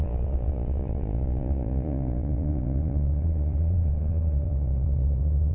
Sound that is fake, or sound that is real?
fake